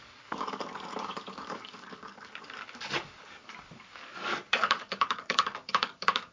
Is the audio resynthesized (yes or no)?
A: yes